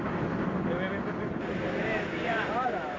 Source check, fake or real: real